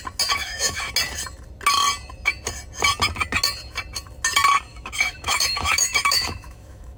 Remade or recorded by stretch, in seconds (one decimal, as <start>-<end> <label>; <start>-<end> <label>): 0.0-0.4 recorded; 0.4-0.9 remade; 0.9-4.7 recorded; 4.7-7.0 remade